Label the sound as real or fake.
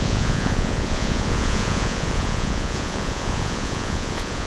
fake